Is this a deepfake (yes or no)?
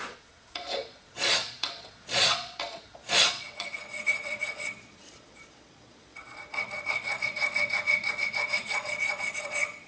yes